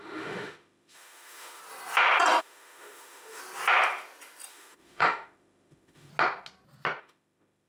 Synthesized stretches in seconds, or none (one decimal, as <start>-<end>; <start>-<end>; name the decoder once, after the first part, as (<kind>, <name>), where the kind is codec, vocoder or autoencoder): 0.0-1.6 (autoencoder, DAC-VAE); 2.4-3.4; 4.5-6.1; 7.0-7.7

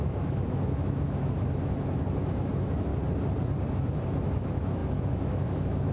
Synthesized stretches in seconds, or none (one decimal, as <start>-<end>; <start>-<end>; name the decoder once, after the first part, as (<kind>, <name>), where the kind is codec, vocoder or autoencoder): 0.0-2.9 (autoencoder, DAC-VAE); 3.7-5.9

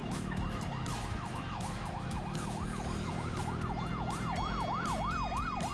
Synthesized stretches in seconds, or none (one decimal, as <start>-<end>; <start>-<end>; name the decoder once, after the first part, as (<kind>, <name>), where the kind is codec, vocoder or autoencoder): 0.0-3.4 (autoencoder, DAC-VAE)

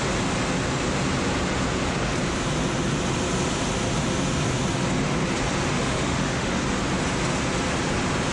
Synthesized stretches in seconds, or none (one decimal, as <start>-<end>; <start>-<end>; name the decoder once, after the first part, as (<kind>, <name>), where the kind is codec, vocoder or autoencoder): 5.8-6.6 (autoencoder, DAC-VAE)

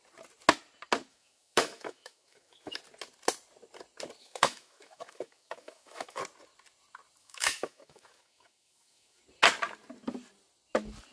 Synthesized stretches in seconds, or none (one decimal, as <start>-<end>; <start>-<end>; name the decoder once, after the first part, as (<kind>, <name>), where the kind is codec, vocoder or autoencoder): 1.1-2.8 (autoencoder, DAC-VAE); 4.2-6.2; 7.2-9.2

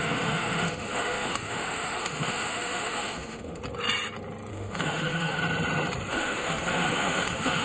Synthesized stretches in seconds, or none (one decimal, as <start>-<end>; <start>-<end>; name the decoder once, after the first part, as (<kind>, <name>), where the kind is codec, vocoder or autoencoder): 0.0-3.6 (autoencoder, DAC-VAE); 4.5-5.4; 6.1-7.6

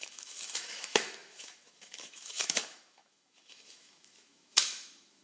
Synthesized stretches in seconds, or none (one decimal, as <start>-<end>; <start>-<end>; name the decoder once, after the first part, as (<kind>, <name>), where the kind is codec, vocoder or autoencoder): 0.0-5.2 (autoencoder, DAC-VAE)